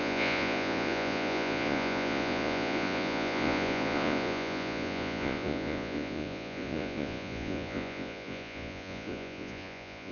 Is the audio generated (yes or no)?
yes